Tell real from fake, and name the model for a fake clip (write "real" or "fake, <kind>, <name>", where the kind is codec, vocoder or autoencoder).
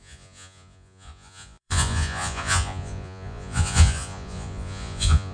fake, vocoder, Vocos